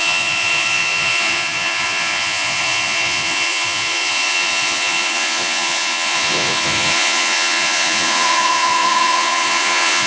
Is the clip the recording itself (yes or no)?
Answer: no